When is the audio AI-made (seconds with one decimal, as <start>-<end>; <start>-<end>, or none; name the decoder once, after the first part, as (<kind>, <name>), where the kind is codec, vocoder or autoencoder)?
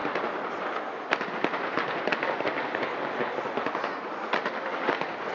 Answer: none